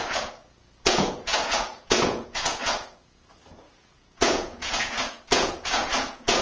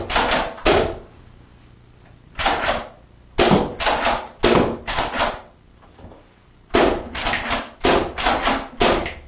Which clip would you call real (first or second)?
second